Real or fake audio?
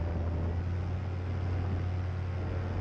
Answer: real